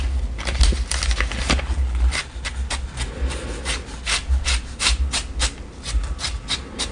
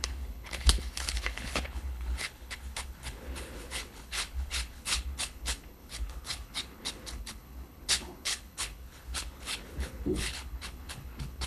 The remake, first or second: second